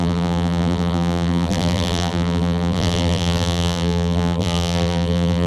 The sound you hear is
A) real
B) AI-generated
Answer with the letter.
B